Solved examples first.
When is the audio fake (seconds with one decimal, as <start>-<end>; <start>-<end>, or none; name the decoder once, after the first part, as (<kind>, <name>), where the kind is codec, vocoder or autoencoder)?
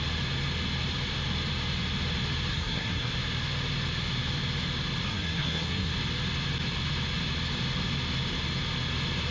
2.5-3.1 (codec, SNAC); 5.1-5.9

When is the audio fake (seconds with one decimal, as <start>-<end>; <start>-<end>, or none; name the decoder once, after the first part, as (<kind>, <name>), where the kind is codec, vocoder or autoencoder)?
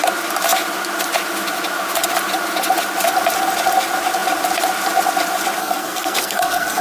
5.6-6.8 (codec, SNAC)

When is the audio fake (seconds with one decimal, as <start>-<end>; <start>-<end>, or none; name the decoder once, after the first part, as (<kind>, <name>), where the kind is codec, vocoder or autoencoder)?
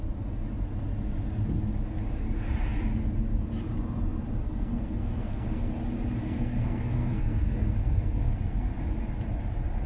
4.4-5.7 (codec, SNAC); 6.2-8.7